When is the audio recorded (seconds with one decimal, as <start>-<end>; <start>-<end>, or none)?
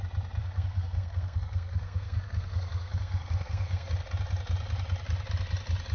0.0-0.4; 3.9-5.9